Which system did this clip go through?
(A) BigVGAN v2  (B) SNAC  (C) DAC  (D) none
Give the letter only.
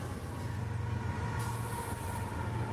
D